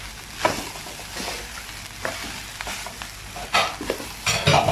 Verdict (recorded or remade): recorded